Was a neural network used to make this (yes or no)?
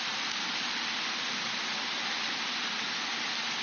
yes